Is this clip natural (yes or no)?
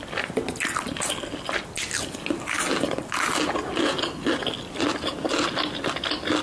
yes